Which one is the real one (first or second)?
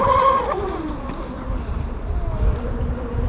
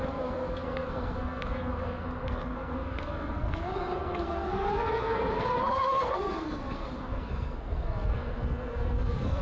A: first